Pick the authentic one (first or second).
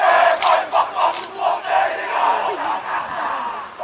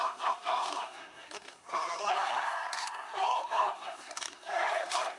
first